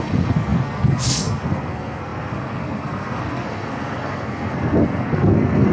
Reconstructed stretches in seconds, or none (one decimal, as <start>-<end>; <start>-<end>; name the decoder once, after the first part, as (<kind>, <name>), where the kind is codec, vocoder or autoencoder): 0.0-5.7 (codec, SNAC)